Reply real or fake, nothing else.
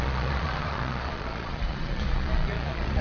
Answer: fake